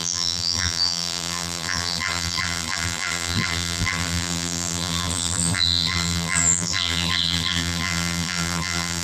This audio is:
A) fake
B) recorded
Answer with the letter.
A